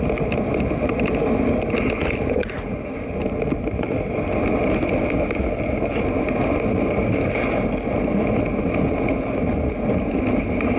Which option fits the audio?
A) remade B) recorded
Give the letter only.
B